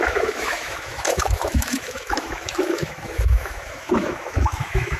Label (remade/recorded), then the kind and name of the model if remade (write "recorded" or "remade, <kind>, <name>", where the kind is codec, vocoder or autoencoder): remade, autoencoder, DAC-VAE